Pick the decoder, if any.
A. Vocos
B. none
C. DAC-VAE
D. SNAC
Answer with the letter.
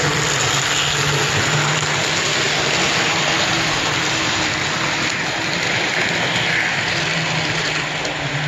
B